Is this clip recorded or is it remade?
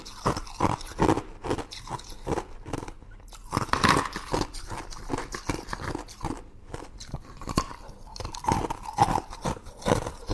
recorded